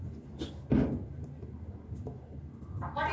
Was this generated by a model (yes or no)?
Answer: no